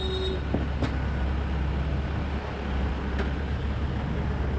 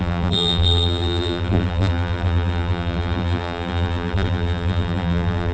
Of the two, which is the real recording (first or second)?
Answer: first